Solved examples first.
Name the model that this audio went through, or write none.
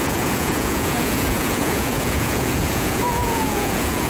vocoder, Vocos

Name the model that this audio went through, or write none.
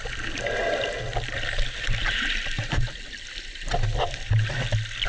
none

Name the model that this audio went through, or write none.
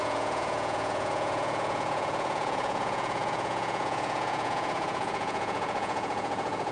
vocoder, Vocos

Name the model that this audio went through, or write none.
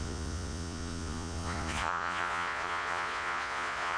vocoder, Vocos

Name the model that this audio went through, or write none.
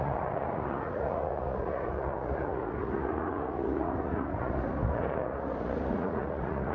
vocoder, Vocos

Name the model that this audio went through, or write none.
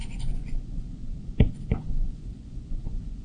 vocoder, Vocos